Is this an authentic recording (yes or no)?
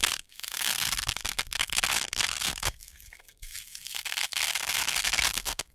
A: no